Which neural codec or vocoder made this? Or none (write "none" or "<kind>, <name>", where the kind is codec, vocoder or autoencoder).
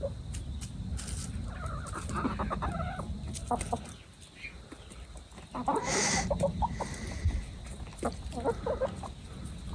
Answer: none